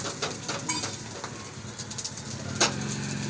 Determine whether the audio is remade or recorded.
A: recorded